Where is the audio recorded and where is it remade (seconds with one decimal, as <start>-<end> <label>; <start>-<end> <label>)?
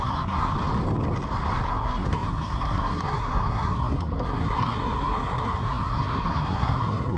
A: 0.0-0.5 remade; 0.5-1.7 recorded; 1.7-7.2 remade